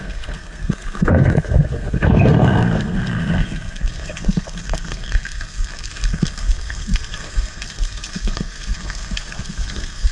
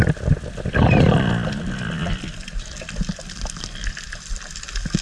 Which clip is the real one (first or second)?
second